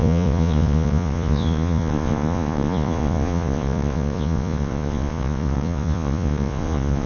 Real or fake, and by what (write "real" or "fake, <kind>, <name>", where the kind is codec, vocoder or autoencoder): fake, vocoder, Vocos